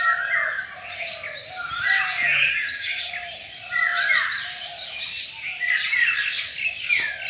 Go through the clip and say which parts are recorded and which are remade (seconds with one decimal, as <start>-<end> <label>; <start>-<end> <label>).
0.0-2.5 recorded; 2.5-3.1 remade; 3.1-7.3 recorded